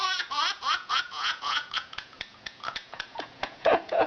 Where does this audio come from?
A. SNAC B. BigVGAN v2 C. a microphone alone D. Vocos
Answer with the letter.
D